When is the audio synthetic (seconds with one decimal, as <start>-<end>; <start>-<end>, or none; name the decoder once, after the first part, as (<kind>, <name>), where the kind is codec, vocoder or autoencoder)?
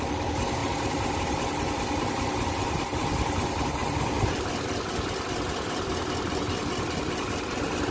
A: none